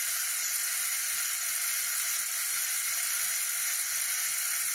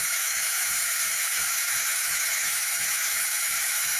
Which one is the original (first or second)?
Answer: first